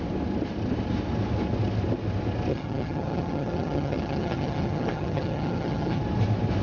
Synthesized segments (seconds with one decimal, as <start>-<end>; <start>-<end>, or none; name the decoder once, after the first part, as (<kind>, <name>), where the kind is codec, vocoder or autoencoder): 2.5-6.0 (vocoder, HiFi-GAN)